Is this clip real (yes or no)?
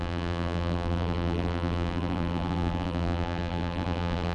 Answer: no